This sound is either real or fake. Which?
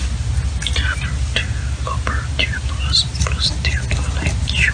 real